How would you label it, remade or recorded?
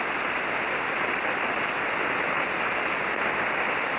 recorded